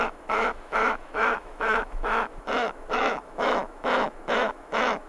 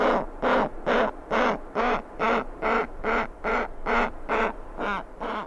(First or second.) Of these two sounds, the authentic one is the second